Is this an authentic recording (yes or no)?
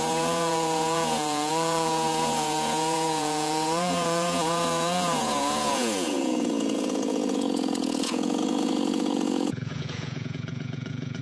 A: no